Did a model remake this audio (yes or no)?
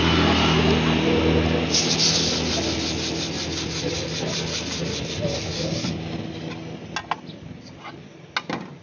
no